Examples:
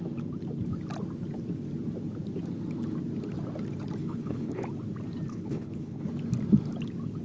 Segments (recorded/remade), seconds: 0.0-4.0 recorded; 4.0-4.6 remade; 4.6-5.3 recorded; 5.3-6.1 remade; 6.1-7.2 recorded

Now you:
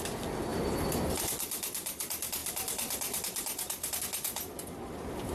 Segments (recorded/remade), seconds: 0.0-5.3 remade

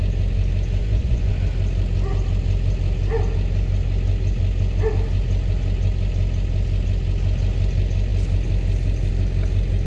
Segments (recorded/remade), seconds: 0.0-0.8 recorded; 0.8-1.3 remade; 1.3-9.9 recorded

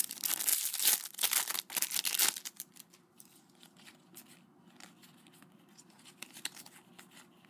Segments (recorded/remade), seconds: 0.0-7.5 recorded

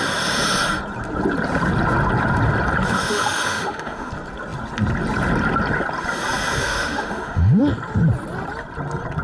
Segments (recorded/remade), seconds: 0.0-2.9 recorded; 2.9-4.1 remade; 4.1-6.6 recorded; 6.6-7.6 remade; 7.6-9.2 recorded

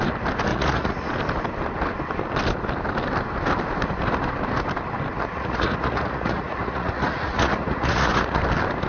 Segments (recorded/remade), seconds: 0.0-0.5 recorded; 0.5-1.1 remade; 1.1-5.1 recorded; 5.1-8.4 remade; 8.4-8.9 recorded